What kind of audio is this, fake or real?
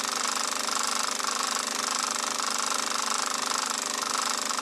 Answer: real